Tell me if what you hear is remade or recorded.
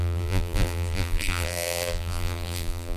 remade